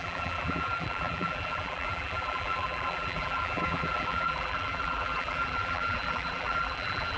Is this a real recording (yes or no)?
no